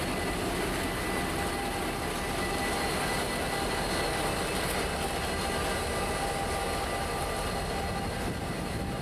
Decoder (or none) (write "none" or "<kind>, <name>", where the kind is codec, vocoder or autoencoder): none